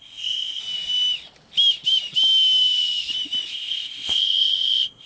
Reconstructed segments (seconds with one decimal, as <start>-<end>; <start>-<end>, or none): 0.0-0.6; 3.5-5.1